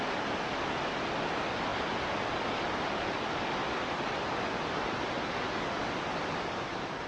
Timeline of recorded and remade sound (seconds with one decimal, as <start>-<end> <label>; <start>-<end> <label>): 0.0-7.1 recorded